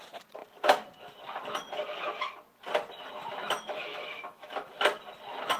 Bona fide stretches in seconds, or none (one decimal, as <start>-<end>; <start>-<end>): 0.0-3.4; 4.7-5.6